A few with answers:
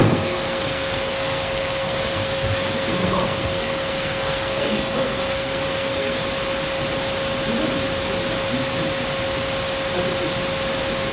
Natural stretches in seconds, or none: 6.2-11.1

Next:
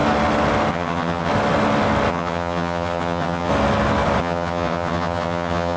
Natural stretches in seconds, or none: 0.0-0.7; 1.3-2.1; 3.5-4.2

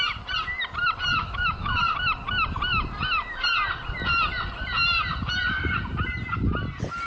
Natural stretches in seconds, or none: 0.0-1.2; 1.8-7.1

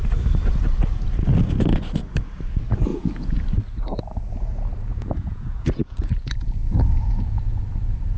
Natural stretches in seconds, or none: 0.0-2.9; 3.4-4.9; 7.6-8.2

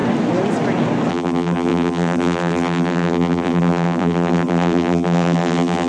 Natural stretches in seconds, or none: 0.0-1.1

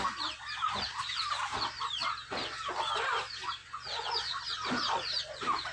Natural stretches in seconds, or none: 0.0-3.6; 5.1-5.7

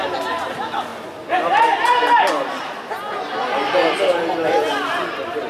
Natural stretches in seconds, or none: 0.0-5.5

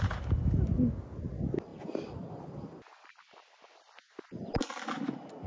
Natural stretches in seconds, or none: 0.0-5.5